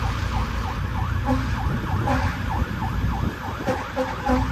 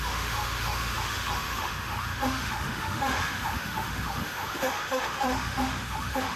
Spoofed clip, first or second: second